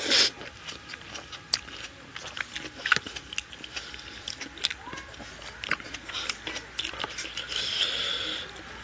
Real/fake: real